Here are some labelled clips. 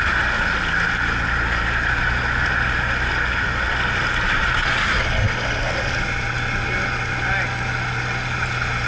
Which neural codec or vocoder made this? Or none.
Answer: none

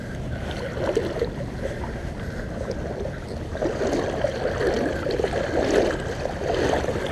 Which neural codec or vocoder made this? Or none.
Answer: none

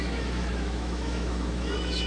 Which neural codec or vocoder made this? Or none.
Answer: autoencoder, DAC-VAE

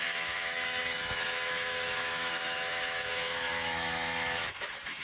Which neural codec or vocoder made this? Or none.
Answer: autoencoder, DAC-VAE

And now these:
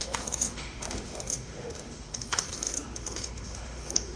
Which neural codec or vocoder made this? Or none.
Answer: autoencoder, DAC-VAE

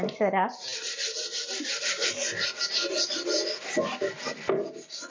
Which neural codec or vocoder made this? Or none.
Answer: none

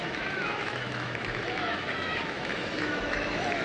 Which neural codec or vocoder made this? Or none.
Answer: autoencoder, DAC-VAE